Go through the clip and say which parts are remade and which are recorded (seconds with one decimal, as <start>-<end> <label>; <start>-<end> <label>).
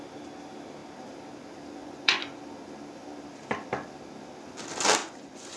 0.0-1.8 recorded; 1.8-2.4 remade; 2.4-5.0 recorded; 5.0-5.6 remade